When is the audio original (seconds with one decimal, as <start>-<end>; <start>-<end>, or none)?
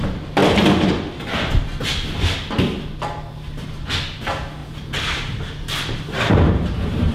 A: 0.0-4.6